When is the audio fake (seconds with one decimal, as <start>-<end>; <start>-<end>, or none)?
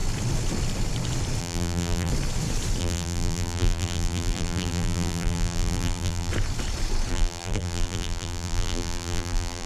1.4-2.1; 2.8-6.3; 7.1-9.7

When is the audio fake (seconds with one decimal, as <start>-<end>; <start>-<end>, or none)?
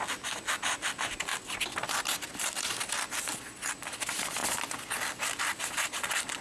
none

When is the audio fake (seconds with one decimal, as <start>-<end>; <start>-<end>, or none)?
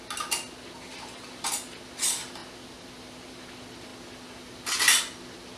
0.9-1.5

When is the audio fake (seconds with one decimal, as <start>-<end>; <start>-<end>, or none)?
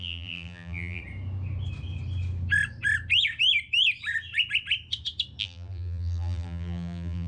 0.0-1.0; 5.4-7.3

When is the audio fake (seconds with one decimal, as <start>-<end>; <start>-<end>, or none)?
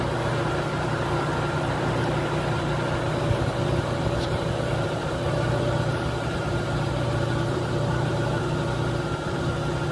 3.6-8.4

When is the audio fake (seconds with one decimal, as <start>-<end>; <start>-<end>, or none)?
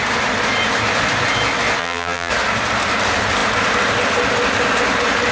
1.8-2.3